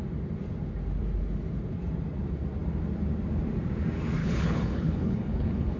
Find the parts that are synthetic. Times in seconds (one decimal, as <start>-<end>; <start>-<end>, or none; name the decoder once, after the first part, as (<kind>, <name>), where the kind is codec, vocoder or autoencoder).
4.2-5.8 (codec, HILCodec)

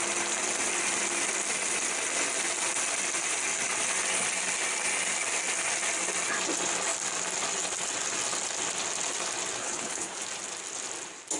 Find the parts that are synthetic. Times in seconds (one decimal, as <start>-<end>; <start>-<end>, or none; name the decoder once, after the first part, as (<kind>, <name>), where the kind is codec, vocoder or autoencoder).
9.6-10.2 (codec, HILCodec)

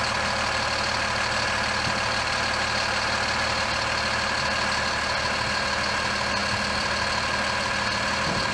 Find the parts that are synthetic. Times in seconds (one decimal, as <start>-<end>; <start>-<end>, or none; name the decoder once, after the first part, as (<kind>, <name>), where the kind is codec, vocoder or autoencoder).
none

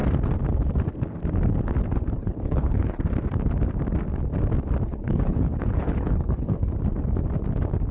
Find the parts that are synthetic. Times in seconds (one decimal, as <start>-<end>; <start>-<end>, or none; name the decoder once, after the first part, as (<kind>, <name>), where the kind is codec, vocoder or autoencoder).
2.2-3.0 (codec, HILCodec); 4.9-6.7